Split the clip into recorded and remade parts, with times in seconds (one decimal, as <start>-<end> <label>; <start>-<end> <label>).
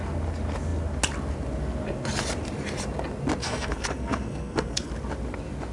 0.0-3.4 recorded; 3.4-4.9 remade; 4.9-5.7 recorded